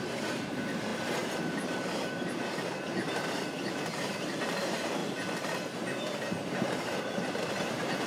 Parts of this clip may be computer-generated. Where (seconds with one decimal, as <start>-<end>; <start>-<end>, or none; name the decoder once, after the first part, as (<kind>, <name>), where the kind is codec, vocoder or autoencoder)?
0.0-5.0 (vocoder, BigVGAN v2); 6.5-8.1

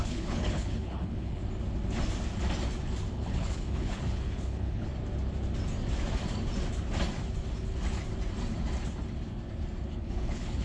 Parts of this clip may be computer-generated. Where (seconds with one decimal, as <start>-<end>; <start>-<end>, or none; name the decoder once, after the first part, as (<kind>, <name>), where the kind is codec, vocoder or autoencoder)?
0.0-1.4 (codec, HILCodec); 3.1-4.9; 9.9-10.6